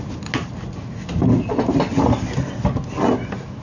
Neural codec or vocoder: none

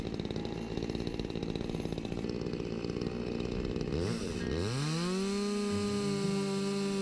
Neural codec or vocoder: none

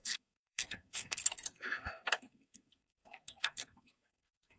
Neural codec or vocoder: codec, SNAC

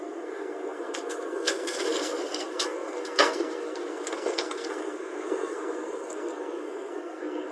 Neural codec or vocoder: codec, SNAC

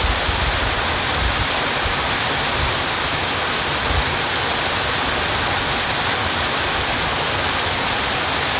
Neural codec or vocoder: none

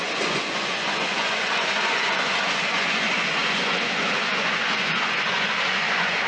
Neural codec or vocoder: vocoder, Vocos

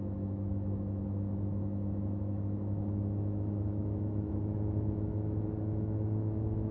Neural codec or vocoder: autoencoder, DAC-VAE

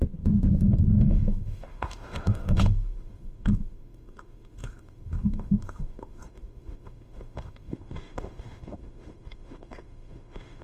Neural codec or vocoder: autoencoder, DAC-VAE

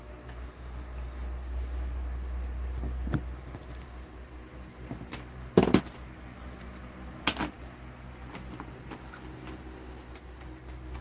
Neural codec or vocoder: none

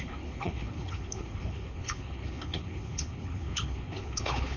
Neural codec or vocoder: codec, HILCodec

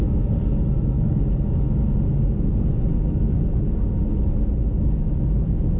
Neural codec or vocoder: none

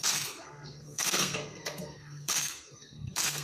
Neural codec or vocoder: codec, SNAC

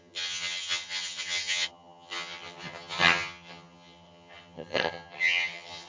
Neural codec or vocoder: vocoder, HiFi-GAN